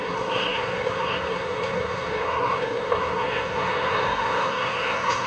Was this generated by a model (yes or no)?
yes